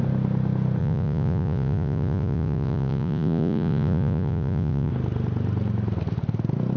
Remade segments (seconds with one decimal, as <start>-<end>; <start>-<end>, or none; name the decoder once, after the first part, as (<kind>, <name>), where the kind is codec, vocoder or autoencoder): 0.8-4.9 (vocoder, Vocos)